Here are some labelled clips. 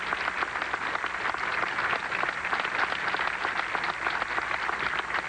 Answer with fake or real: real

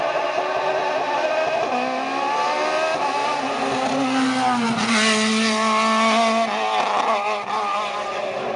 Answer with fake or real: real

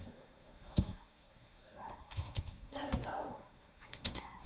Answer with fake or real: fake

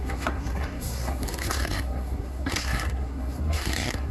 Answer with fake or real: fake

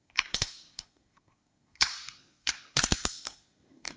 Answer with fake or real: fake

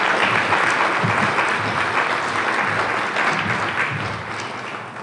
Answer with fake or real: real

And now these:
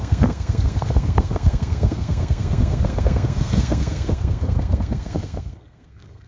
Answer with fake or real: fake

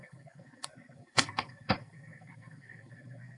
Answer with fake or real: fake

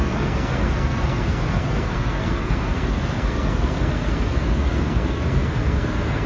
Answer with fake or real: fake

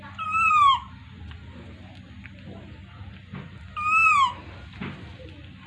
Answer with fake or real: real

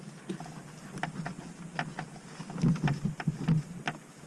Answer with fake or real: real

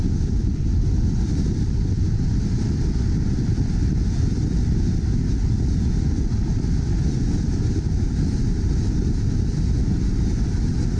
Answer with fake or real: real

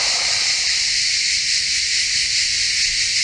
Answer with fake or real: real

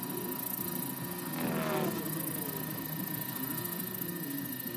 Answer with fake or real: real